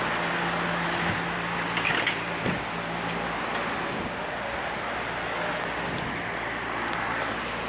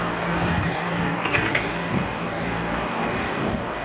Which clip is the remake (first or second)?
second